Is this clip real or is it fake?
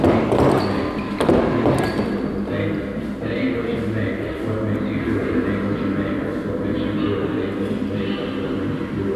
real